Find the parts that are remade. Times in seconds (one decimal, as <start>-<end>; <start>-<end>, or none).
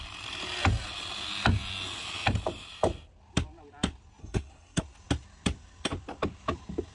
4.2-4.8